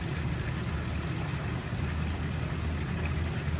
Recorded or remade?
recorded